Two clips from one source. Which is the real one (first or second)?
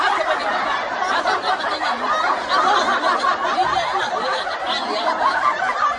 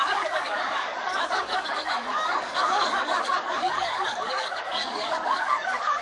first